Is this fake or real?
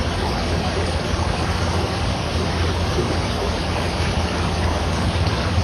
fake